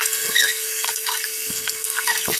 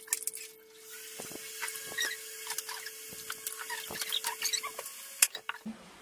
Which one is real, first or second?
second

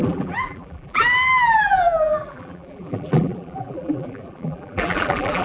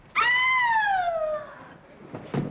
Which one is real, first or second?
second